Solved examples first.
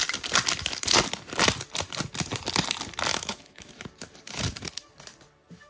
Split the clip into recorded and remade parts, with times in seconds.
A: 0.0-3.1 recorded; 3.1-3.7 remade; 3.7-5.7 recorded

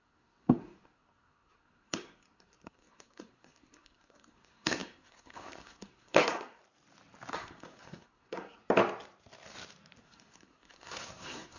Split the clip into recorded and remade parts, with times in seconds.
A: 0.0-6.6 remade; 6.6-7.3 recorded; 7.3-8.6 remade; 8.6-10.0 recorded; 10.0-11.6 remade

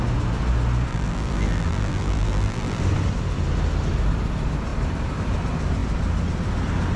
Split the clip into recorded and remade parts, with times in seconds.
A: 0.0-0.9 recorded; 0.9-2.8 remade; 2.8-7.0 recorded

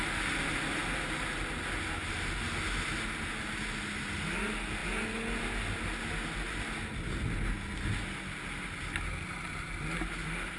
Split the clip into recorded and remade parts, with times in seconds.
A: 0.0-10.6 recorded

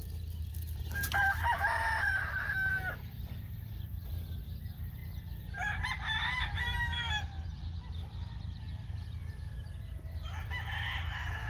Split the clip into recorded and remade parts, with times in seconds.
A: 0.0-0.5 recorded; 0.5-4.3 remade; 4.3-11.5 recorded

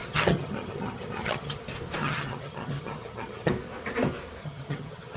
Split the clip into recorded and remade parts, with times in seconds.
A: 0.0-1.6 remade; 1.6-2.0 recorded; 2.0-3.5 remade; 3.5-4.4 recorded; 4.4-5.2 remade

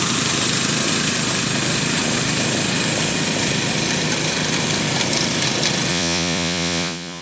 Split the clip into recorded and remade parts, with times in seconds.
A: 0.0-5.9 recorded; 5.9-7.2 remade

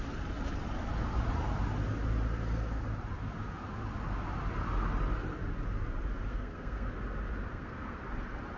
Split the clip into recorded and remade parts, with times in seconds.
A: 0.0-6.3 recorded; 6.3-6.9 remade; 6.9-7.5 recorded; 7.5-8.0 remade; 8.0-8.6 recorded